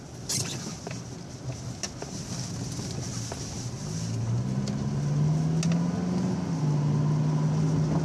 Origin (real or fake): real